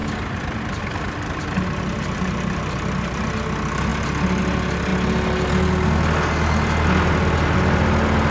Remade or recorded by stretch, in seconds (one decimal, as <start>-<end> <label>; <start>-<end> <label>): 0.0-8.3 recorded